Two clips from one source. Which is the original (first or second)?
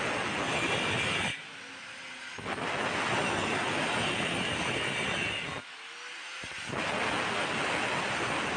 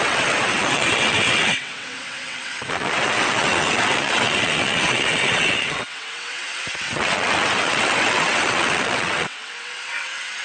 first